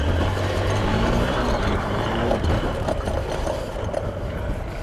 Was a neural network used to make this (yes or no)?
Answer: yes